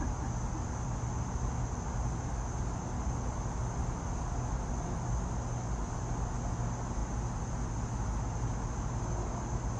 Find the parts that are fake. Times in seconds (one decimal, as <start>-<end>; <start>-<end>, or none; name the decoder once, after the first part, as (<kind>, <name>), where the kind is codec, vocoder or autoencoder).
none